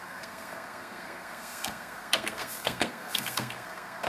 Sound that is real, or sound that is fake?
fake